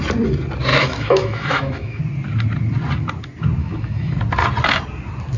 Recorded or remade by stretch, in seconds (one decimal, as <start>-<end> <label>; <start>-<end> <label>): 0.0-0.7 recorded; 0.7-2.0 remade; 2.0-3.6 recorded; 3.6-4.1 remade; 4.1-5.4 recorded